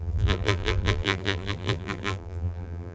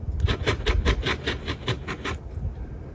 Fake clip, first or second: first